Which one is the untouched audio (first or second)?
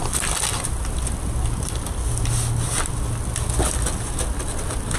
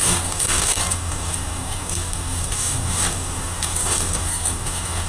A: first